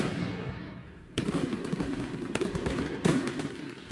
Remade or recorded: remade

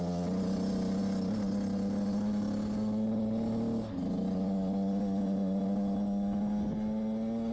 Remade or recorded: recorded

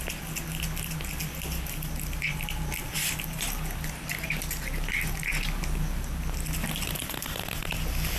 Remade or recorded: recorded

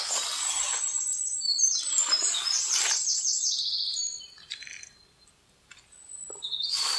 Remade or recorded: recorded